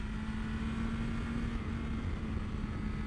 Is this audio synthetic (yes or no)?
no